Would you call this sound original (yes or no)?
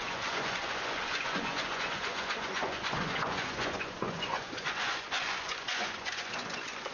no